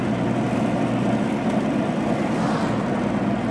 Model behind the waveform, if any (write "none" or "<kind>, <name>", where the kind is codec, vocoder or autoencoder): none